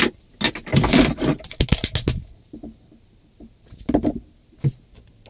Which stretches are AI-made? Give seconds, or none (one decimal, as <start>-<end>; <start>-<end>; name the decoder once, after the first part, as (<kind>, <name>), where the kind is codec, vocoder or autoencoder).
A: none